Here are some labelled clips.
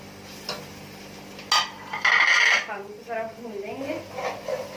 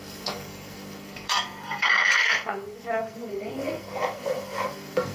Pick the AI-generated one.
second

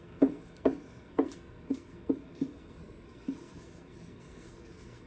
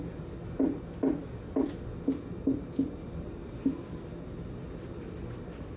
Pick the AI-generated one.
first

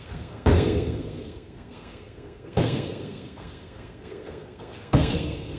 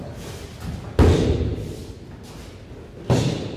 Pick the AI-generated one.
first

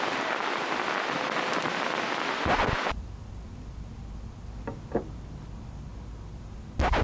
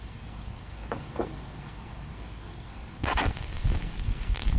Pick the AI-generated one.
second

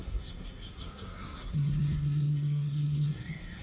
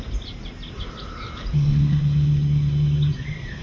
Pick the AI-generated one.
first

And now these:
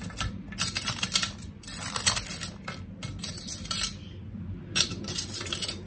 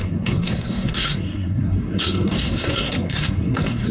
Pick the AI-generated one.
second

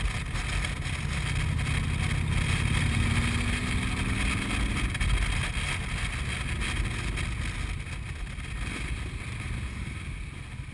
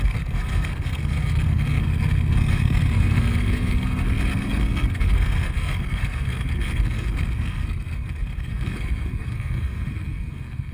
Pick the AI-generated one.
second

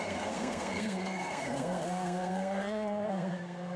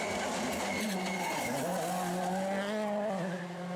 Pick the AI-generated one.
first